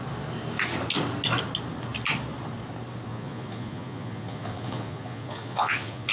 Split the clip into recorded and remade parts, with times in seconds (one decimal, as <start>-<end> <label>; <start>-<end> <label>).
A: 0.0-3.1 recorded; 3.1-6.1 remade

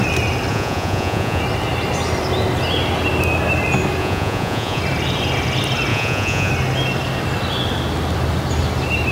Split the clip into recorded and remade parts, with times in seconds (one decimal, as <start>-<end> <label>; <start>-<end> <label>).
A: 0.0-0.5 recorded; 0.5-1.4 remade; 1.4-4.0 recorded; 4.0-4.8 remade; 4.8-5.9 recorded; 5.9-6.5 remade; 6.5-9.1 recorded